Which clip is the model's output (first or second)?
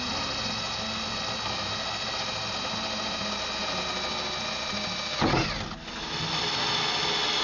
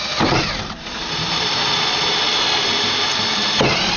second